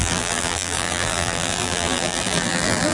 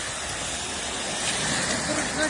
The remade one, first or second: first